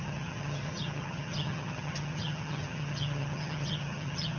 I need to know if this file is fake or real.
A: fake